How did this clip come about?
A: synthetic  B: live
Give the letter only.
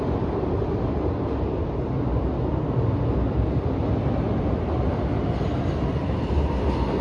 B